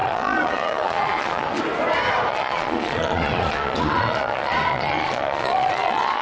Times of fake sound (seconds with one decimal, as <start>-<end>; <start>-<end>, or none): 0.0-1.6; 2.3-6.2